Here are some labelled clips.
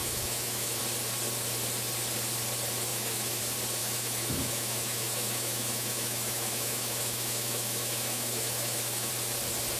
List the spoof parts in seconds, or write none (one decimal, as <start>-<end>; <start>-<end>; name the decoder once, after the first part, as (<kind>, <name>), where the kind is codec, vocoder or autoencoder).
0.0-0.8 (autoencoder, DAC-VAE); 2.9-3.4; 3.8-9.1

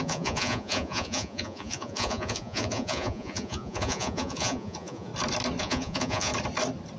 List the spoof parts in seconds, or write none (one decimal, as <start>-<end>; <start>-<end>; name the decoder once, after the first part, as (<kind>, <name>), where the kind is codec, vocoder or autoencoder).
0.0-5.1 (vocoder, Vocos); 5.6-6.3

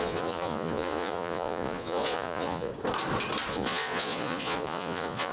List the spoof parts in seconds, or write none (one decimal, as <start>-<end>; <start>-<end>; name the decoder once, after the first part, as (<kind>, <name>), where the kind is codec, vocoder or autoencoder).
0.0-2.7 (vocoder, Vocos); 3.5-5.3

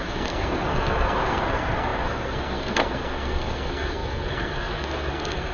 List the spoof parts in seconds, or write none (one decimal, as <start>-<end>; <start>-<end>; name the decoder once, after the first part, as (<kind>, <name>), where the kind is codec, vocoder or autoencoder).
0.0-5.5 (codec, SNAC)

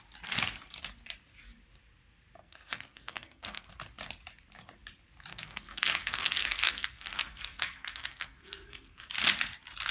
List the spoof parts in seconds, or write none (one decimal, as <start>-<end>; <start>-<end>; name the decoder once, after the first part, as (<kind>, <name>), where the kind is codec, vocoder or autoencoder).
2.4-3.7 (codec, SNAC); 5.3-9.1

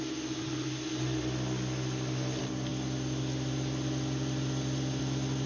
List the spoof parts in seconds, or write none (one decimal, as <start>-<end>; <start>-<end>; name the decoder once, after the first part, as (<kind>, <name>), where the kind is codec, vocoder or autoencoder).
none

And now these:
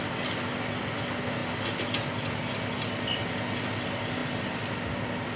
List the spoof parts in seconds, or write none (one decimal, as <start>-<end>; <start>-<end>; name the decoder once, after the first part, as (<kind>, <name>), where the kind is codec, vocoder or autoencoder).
none

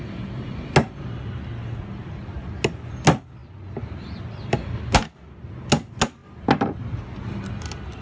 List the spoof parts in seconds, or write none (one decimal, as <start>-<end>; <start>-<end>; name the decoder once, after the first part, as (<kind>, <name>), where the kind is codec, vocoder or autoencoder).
none